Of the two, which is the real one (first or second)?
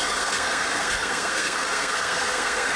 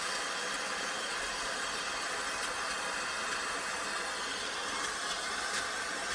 second